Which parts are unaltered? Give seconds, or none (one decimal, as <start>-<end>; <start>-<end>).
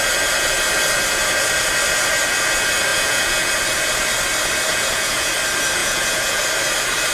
0.0-2.9; 3.5-4.7; 5.3-5.8; 6.4-7.1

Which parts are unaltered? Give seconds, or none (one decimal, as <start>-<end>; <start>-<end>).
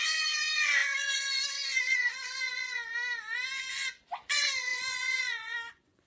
2.9-4.3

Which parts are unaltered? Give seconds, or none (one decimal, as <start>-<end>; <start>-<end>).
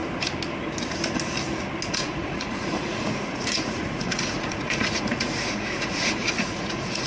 0.0-1.9